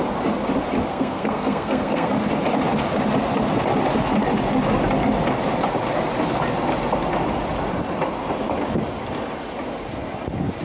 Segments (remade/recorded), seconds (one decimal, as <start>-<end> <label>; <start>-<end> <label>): 0.0-0.9 recorded; 0.9-2.1 remade; 2.1-10.6 recorded